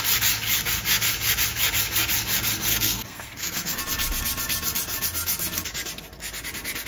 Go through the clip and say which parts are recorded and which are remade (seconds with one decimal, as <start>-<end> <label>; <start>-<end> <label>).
0.0-2.7 recorded; 2.7-3.8 remade; 3.8-6.9 recorded